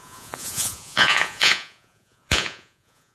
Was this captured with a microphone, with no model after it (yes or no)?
no